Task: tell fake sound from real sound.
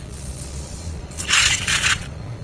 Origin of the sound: fake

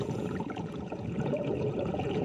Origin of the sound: fake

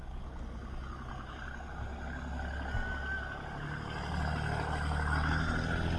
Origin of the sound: real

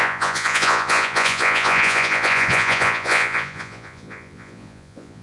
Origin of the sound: fake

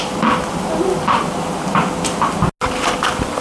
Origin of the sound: real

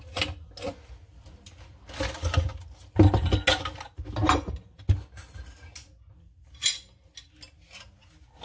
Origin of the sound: real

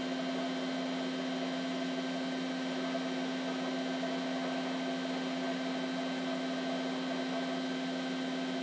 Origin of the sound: real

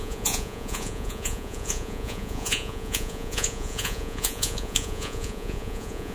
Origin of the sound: fake